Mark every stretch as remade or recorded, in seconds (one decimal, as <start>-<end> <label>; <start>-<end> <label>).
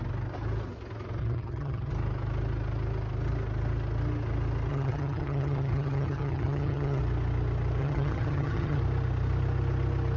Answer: 0.0-1.2 recorded; 1.2-1.9 remade; 1.9-4.7 recorded; 4.7-7.0 remade; 7.0-7.8 recorded; 7.8-8.8 remade; 8.8-10.2 recorded